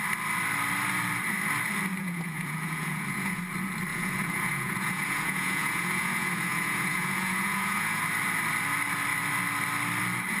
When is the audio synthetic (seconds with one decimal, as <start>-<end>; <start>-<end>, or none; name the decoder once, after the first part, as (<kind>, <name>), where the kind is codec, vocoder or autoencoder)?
2.0-3.4 (vocoder, Vocos); 3.9-8.0